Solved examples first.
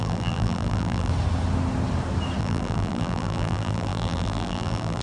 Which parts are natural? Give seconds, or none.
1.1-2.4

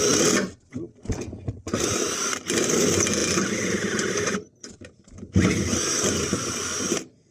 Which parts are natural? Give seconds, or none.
0.0-7.3

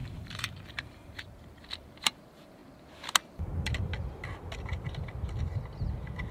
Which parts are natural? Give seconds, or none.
2.6-3.3; 3.9-6.3

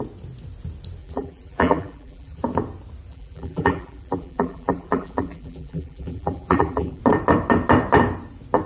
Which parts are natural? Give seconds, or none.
0.0-1.0; 2.4-3.1; 7.0-8.7